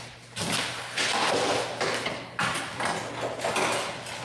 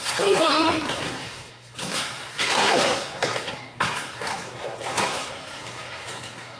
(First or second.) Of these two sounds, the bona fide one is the first